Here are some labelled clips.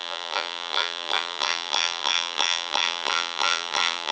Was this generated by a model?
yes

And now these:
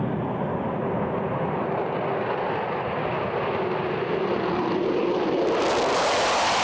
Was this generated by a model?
no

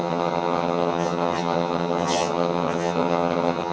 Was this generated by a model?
yes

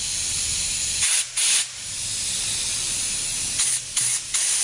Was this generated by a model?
no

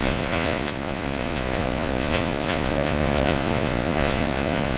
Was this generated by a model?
yes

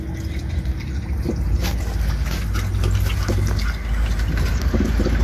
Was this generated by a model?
no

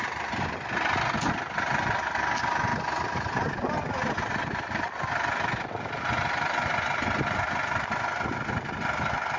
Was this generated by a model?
no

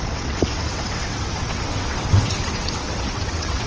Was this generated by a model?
yes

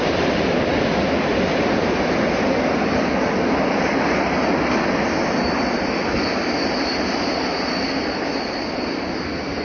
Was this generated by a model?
no